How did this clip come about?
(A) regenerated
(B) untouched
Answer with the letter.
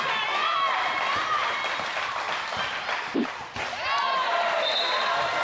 B